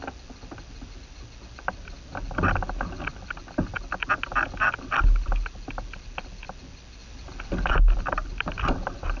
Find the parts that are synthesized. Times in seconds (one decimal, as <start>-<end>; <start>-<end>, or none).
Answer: none